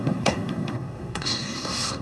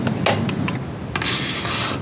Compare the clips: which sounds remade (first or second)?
first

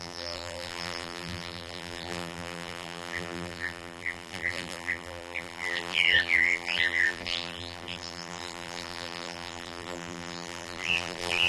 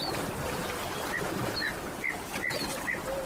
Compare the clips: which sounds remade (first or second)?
first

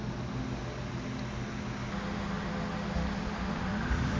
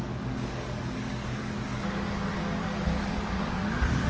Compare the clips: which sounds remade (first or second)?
second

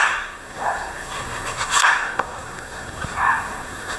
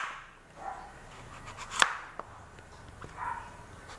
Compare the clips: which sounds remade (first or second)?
first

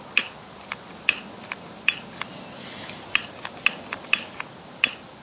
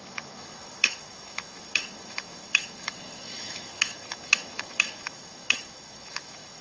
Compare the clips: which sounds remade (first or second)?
second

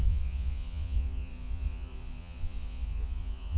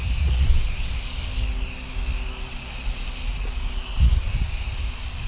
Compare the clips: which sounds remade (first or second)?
first